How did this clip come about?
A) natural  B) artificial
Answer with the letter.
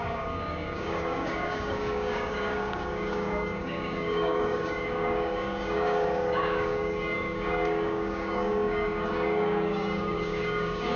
B